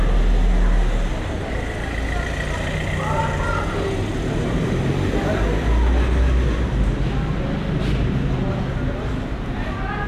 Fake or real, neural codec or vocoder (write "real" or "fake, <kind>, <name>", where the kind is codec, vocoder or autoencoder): real